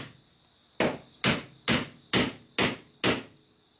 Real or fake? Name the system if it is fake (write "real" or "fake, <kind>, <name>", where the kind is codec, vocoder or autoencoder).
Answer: real